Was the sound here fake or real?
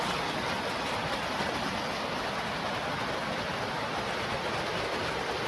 real